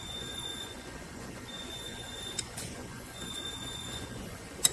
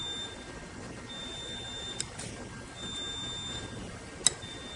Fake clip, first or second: first